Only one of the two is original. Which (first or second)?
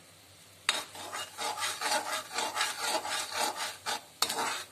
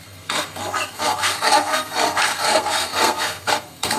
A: first